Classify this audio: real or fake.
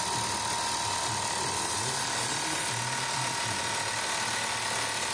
real